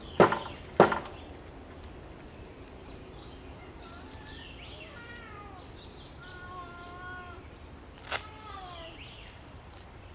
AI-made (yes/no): yes